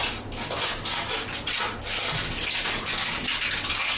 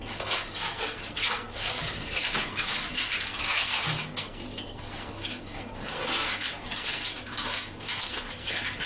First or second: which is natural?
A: first